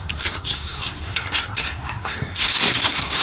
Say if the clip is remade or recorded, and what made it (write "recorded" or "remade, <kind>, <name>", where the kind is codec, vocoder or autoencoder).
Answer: remade, codec, SNAC